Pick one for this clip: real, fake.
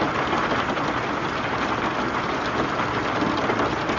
real